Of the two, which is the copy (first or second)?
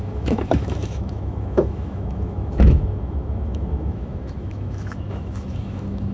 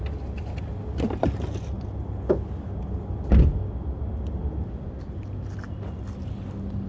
first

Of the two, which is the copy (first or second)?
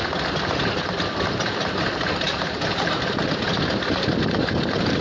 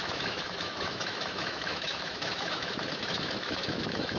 second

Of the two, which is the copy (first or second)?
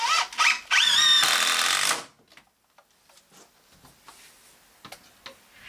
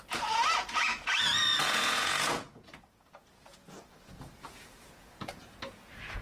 second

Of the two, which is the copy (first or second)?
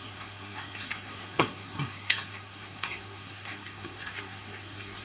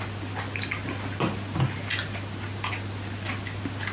first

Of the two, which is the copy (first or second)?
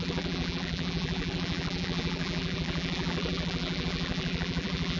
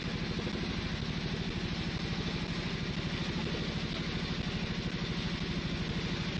first